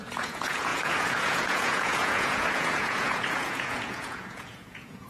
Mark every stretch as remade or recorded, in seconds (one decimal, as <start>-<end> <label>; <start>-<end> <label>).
0.0-5.1 remade